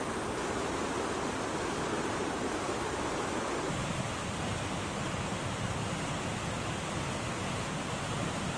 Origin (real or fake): real